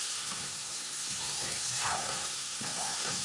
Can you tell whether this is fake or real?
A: fake